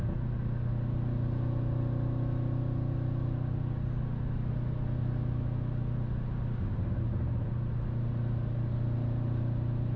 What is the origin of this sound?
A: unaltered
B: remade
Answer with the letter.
A